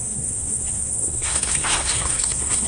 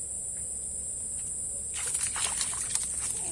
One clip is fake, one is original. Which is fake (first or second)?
first